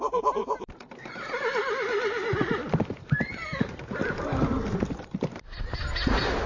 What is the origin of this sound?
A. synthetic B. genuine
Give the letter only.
B